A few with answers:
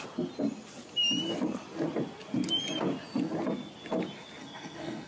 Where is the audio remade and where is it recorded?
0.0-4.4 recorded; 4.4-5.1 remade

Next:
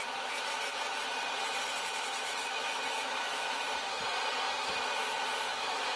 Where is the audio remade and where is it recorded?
0.0-1.9 recorded; 1.9-3.6 remade; 3.6-5.5 recorded; 5.5-6.0 remade

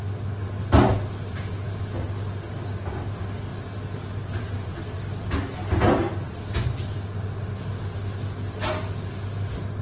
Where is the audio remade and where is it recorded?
0.0-3.5 recorded; 3.5-4.7 remade; 4.7-9.8 recorded

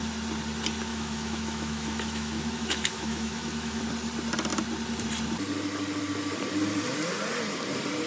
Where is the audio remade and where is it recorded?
0.0-0.9 recorded; 0.9-3.8 remade; 3.8-8.1 recorded

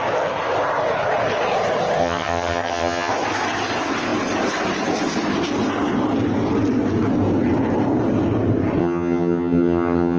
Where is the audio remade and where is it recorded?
0.0-2.0 recorded; 2.0-3.1 remade; 3.1-8.8 recorded; 8.8-10.2 remade

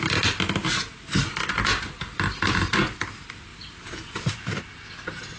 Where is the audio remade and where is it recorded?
0.0-5.4 recorded